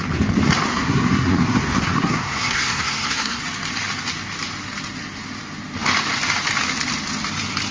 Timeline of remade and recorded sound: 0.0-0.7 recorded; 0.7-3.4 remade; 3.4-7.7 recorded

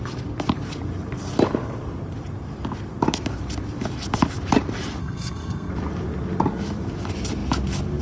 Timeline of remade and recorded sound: 0.0-5.0 recorded; 5.0-5.7 remade; 5.7-8.0 recorded